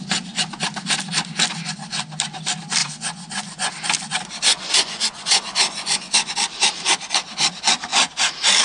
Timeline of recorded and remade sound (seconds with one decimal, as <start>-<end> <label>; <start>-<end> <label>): 0.0-2.8 recorded; 2.8-3.7 remade; 3.7-4.5 recorded; 4.5-6.3 remade; 6.3-8.6 recorded